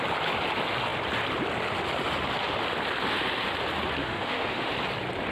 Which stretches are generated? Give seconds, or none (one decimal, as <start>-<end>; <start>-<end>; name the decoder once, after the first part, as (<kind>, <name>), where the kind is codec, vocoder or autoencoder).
4.0-4.7 (autoencoder, DAC-VAE)